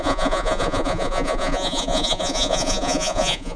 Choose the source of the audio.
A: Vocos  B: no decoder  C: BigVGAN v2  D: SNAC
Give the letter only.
A